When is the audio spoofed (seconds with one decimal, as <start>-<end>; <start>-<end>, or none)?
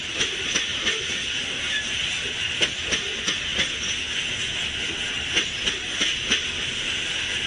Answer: 0.7-2.0